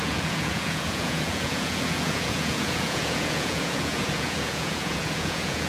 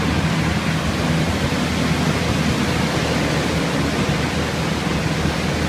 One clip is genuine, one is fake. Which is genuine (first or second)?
second